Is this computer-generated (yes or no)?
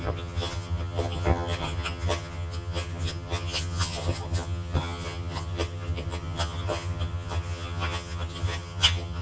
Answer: yes